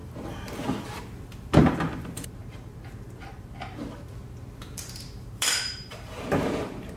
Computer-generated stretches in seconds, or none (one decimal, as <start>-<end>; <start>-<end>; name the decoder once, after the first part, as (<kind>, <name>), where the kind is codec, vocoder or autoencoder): 0.0-3.8 (vocoder, BigVGAN v2); 4.6-7.0